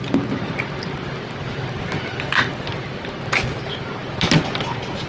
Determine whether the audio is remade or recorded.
recorded